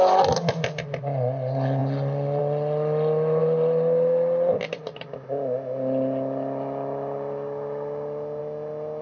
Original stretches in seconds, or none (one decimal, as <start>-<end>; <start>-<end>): 0.0-9.0